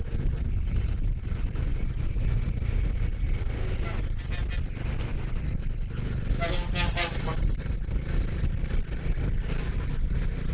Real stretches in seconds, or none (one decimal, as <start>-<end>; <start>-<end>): 0.0-1.7; 2.5-10.5